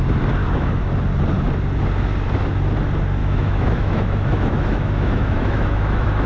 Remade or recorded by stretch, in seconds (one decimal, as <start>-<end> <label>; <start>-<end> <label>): 0.0-0.4 recorded; 0.4-0.9 remade; 0.9-3.2 recorded; 3.2-6.3 remade